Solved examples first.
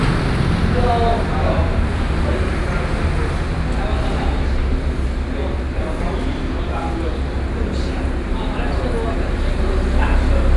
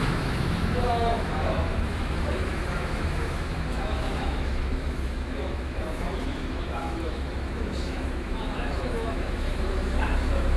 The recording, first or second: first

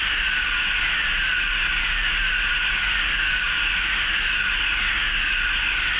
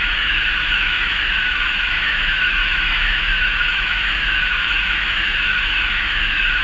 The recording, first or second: first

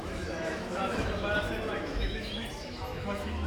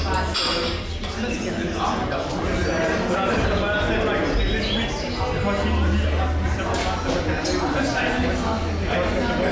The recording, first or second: second